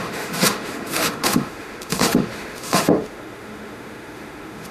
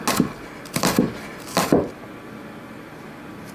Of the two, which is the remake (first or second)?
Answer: first